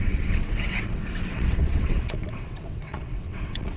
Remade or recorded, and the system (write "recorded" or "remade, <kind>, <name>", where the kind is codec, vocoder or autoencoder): remade, vocoder, WaveNeXt